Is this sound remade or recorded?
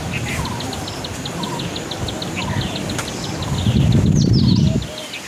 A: recorded